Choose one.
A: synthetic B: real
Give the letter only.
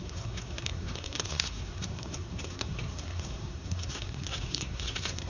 A